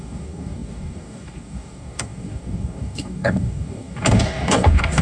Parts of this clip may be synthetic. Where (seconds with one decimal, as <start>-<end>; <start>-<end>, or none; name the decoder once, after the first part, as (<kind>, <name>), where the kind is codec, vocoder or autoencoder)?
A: 0.0-5.0 (codec, DAC)